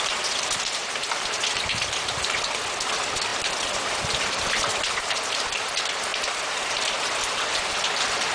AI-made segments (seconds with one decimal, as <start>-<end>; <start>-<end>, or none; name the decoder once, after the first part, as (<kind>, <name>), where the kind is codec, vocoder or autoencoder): 0.0-8.3 (vocoder, BigVGAN v2)